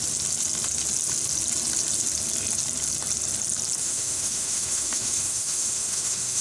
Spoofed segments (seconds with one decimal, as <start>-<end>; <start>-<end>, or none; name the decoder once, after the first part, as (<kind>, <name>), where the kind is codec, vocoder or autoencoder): 3.8-6.4 (autoencoder, DAC-VAE)